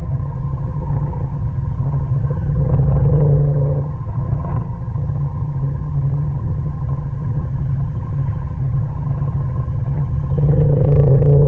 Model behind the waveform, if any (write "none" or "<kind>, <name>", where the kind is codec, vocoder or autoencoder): vocoder, HiFi-GAN